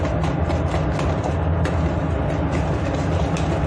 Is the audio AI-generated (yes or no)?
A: no